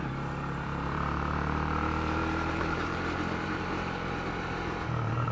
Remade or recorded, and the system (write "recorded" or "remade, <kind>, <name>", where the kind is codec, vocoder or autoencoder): remade, vocoder, BigVGAN v2